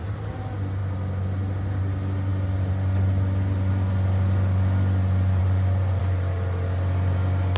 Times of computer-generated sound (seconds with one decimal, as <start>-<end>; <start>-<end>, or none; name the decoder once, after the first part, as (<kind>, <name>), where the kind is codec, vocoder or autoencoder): 5.4-6.0 (vocoder, Vocos)